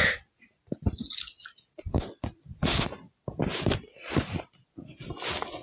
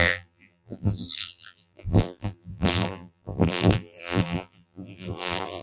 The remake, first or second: second